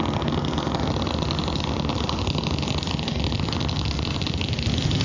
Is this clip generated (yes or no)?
no